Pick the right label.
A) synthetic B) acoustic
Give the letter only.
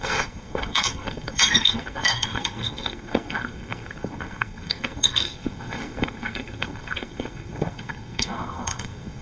A